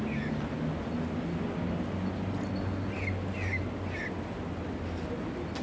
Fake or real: real